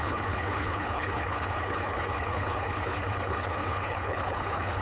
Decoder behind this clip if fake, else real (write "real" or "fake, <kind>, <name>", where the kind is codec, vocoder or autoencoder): fake, codec, HILCodec